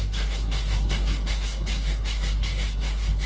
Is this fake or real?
fake